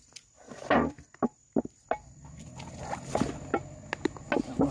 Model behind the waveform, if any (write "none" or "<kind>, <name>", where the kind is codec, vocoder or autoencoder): none